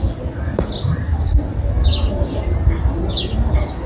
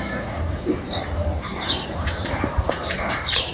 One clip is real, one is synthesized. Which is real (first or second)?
first